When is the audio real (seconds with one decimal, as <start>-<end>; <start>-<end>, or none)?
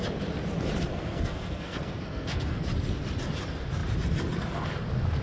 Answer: 0.0-0.9; 2.7-5.2